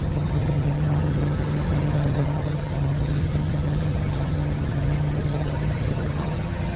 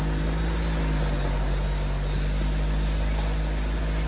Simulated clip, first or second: first